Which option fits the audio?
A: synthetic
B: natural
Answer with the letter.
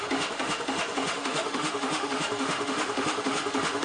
A